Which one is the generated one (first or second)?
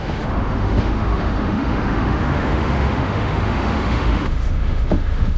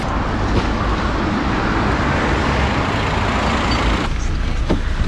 first